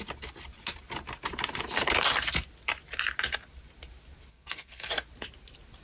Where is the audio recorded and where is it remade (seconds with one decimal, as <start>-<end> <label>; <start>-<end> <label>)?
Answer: 0.0-4.3 recorded; 4.3-4.9 remade; 4.9-5.8 recorded